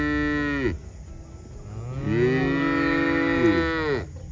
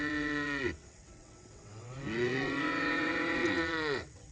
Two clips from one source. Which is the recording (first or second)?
first